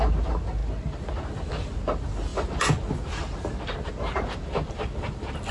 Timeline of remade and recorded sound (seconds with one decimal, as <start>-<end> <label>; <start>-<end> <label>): 0.0-5.5 recorded

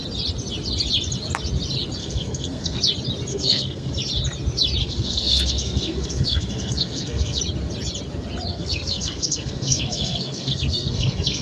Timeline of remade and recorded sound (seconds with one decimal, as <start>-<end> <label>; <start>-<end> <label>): 0.0-2.0 recorded; 2.0-2.8 remade; 2.8-3.3 recorded; 3.3-3.9 remade; 3.9-4.8 recorded; 4.8-7.4 remade; 7.4-8.5 recorded; 8.5-11.4 remade

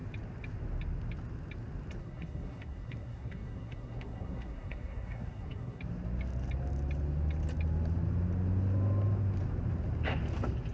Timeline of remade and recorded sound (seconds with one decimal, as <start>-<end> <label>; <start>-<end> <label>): 0.0-2.0 recorded; 2.0-5.8 remade; 5.8-10.7 recorded

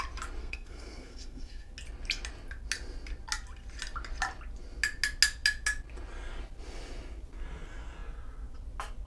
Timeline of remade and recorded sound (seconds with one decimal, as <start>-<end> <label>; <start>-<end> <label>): 0.0-0.4 recorded; 0.4-1.7 remade; 1.7-9.1 recorded

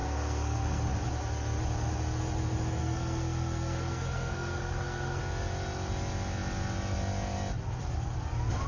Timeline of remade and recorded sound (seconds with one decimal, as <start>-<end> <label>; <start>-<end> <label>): 0.0-0.8 remade; 0.8-2.8 recorded; 2.8-5.2 remade; 5.2-8.7 recorded

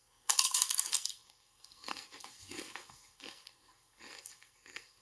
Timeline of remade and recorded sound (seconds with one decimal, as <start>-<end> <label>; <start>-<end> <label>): 0.0-5.0 remade